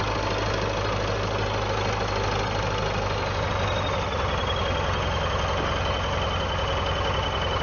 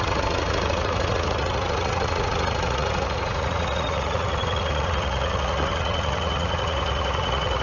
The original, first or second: first